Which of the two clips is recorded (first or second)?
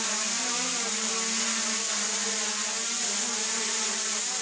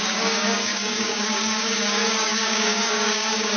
first